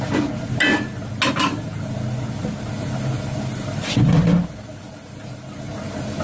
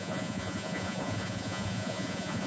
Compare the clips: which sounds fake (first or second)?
second